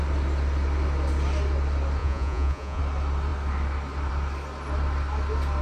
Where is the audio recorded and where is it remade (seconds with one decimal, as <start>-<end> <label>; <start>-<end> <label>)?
0.0-2.0 recorded; 2.0-2.8 remade; 2.8-5.6 recorded